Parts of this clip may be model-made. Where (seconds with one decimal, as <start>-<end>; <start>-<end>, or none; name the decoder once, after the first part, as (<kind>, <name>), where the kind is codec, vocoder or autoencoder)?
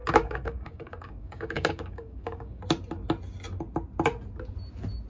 0.0-2.6 (codec, DAC)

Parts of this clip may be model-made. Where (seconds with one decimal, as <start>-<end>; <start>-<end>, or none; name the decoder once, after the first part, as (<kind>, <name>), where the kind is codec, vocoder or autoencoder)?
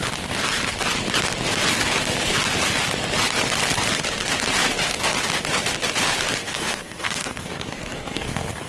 6.4-8.7 (codec, SNAC)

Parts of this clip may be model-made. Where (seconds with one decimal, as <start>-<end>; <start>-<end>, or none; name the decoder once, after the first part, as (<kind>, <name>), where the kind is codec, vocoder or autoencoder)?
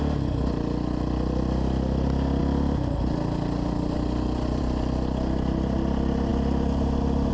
none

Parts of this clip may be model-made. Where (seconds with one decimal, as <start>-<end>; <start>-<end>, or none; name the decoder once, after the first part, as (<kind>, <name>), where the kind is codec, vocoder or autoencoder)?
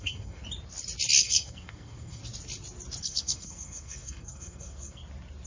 0.0-0.4 (codec, SNAC); 1.2-2.2; 3.0-5.0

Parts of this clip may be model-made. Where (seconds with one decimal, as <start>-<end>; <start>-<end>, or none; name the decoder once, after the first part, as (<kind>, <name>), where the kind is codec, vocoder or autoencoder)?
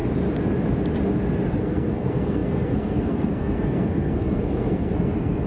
1.5-5.5 (codec, SNAC)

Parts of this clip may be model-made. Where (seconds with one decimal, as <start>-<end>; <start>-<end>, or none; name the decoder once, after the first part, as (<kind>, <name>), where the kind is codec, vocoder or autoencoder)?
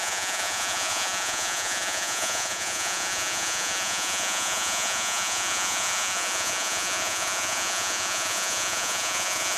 0.0-9.6 (vocoder, Vocos)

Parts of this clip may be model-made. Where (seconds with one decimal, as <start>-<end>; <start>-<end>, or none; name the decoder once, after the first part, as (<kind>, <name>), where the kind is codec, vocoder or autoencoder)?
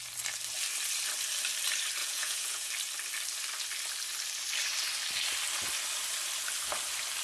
2.0-2.7 (vocoder, Vocos)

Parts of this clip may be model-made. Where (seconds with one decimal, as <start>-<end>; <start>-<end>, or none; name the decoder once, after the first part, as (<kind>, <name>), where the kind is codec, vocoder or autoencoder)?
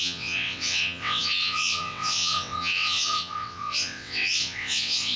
0.0-5.2 (vocoder, WaveNeXt)